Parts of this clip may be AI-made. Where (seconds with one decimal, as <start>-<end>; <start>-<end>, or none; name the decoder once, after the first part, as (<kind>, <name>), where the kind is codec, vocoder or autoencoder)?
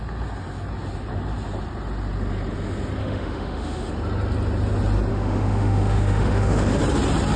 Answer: 3.0-3.9 (autoencoder, DAC-VAE); 5.1-6.8